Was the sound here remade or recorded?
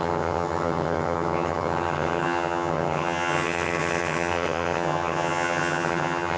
remade